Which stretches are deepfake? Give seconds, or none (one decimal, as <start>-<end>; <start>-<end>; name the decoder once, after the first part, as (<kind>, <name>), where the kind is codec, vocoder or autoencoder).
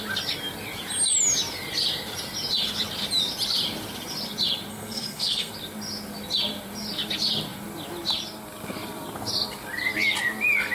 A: 4.7-5.5 (codec, SNAC)